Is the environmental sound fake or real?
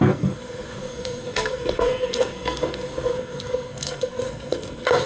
fake